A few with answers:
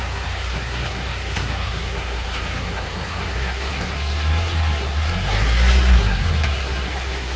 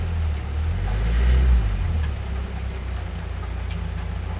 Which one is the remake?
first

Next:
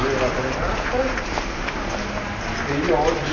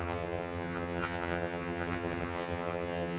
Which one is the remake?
second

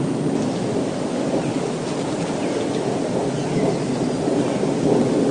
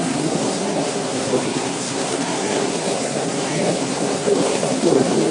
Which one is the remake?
second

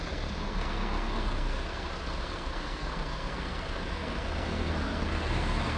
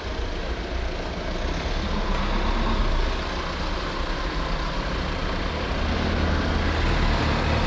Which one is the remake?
first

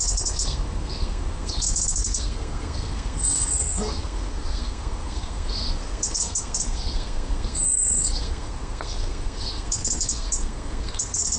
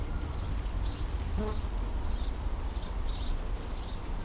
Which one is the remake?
first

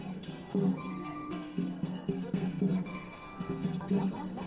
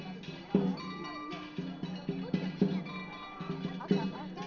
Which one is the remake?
first